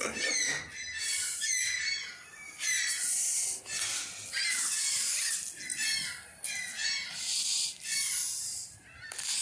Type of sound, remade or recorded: recorded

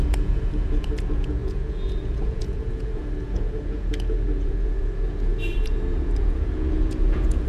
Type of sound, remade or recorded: remade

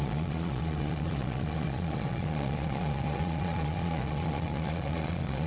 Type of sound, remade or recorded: remade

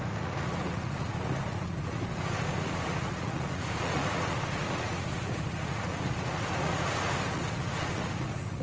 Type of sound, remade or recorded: remade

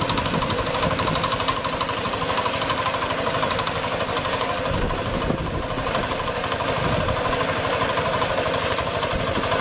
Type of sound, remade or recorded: recorded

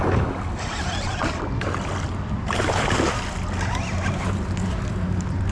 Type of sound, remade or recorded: recorded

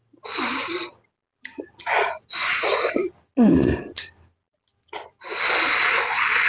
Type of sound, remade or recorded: recorded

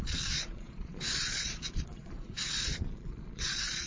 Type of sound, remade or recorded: remade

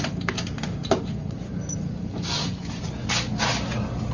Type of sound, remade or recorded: recorded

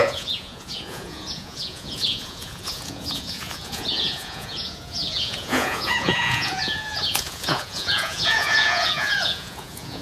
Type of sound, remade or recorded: remade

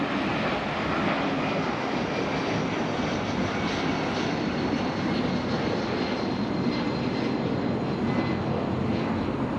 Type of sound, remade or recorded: recorded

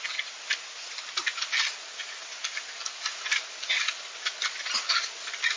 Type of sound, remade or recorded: recorded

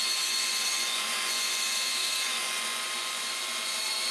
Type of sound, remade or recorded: remade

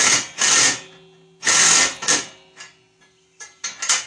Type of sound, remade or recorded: recorded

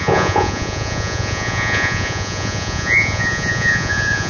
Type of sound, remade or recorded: remade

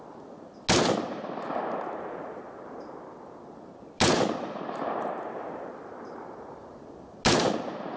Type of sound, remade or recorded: recorded